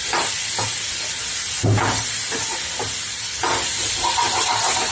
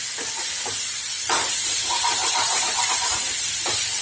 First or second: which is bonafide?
first